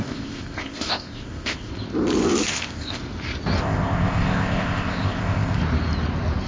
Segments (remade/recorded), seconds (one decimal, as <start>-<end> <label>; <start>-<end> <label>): 0.0-1.7 remade; 1.7-2.5 recorded; 2.5-3.0 remade; 3.0-3.6 recorded; 3.6-5.6 remade; 5.6-6.5 recorded